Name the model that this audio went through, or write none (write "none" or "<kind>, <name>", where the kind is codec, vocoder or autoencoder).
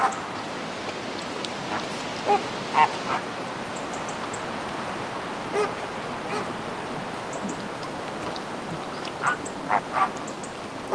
none